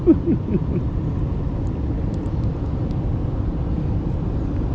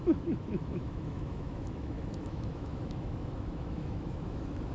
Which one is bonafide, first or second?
first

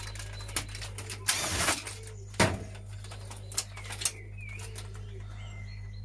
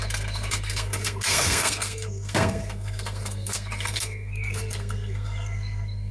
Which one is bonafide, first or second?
first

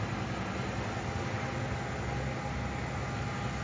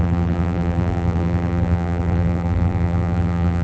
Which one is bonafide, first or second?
first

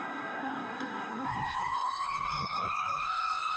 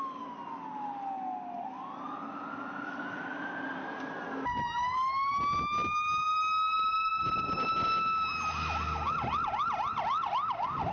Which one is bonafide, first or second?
second